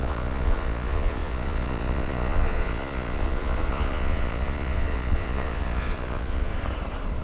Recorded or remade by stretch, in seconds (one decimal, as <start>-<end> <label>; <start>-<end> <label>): 0.0-6.5 remade; 6.5-7.2 recorded